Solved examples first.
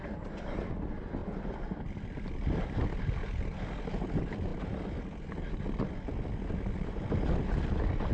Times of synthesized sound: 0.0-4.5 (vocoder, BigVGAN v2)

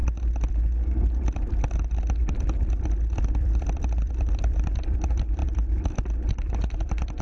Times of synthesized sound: 3.3-7.2 (vocoder, BigVGAN v2)

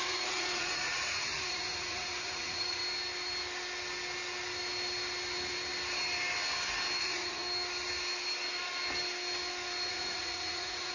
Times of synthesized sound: 0.0-2.8 (vocoder, Vocos); 7.0-7.4; 9.9-10.9

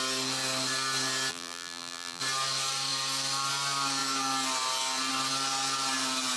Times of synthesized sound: 1.3-2.2 (vocoder, BigVGAN v2)

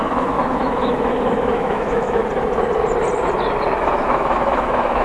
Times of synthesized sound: 0.0-2.2 (autoencoder, DAC-VAE); 3.8-5.0

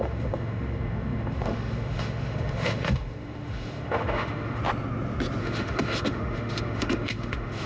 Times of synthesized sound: 0.0-4.6 (autoencoder, DAC-VAE); 5.4-7.7

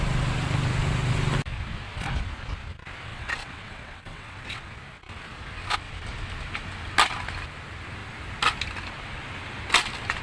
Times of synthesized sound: 3.1-4.7 (vocoder, WaveNeXt)

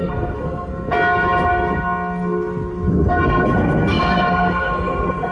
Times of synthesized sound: 0.0-0.7 (codec, SNAC); 2.9-5.3